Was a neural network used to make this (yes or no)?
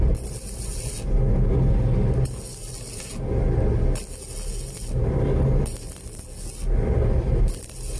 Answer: no